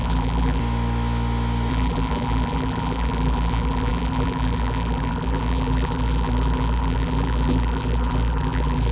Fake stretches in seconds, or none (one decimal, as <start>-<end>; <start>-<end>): 0.0-0.6; 1.7-8.9